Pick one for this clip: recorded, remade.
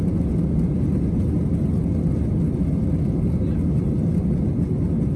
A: recorded